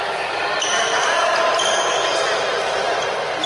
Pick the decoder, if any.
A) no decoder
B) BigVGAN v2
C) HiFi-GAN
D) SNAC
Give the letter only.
A